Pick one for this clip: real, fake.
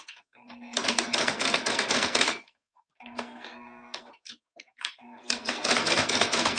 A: fake